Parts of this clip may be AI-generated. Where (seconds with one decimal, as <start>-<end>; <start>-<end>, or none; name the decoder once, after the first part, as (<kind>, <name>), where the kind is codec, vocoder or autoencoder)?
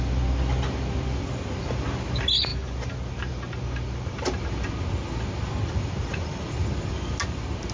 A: none